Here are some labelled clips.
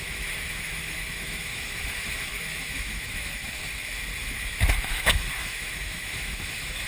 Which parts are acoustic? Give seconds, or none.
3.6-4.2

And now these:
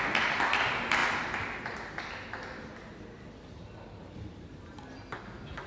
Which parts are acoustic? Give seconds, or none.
0.0-5.7

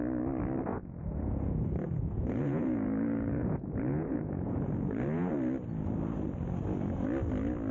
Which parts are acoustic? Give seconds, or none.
0.0-0.7; 5.3-7.7

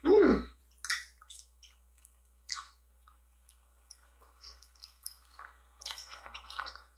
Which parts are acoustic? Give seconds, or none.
0.6-1.2

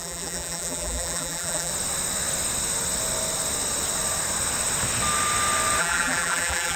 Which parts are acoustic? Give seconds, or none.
1.7-5.8

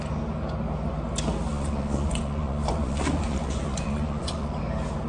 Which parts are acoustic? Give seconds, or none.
0.0-1.5; 4.6-5.1